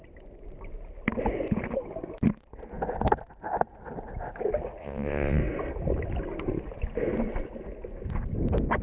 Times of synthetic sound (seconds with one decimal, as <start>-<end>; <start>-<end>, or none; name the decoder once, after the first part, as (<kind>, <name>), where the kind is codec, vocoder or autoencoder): 4.8-5.4 (vocoder, WaveNeXt)